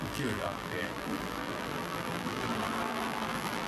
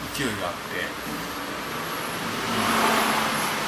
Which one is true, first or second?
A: second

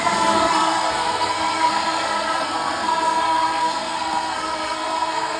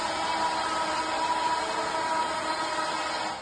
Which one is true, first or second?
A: second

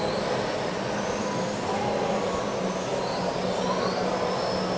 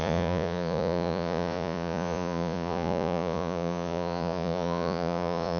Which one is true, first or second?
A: first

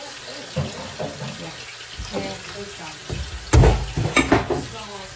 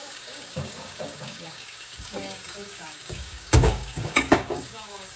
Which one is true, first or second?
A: first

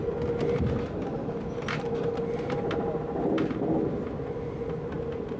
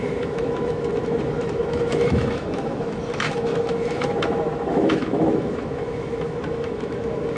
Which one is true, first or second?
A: first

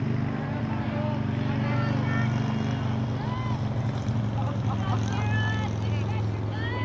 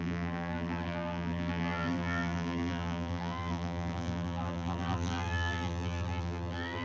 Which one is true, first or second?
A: first